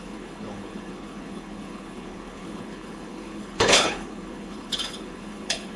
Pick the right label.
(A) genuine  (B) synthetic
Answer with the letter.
B